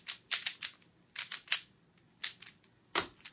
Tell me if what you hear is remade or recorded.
recorded